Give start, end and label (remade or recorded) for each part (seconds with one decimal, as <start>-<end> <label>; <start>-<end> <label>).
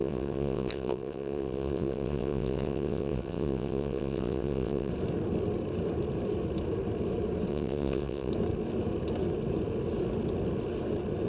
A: 0.0-4.9 remade; 4.9-7.5 recorded; 7.5-8.3 remade; 8.3-11.3 recorded